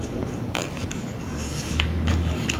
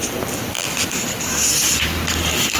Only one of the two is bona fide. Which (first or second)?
second